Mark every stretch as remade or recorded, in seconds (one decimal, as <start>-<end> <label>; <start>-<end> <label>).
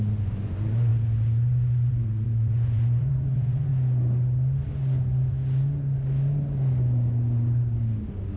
0.0-0.9 remade; 0.9-1.9 recorded; 1.9-3.7 remade; 3.7-8.4 recorded